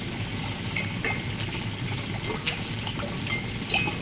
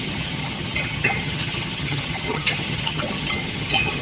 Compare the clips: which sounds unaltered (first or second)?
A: first